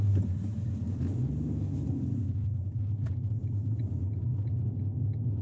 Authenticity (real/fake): real